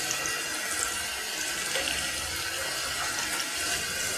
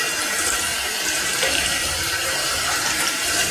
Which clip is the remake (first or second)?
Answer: second